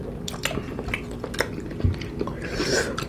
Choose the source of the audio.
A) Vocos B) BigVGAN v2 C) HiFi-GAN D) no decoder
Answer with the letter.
D